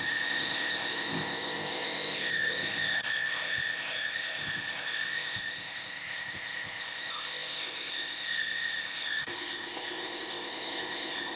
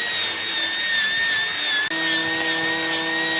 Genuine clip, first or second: second